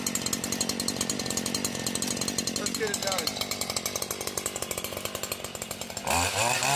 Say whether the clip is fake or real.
real